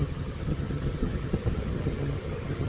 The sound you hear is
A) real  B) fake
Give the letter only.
B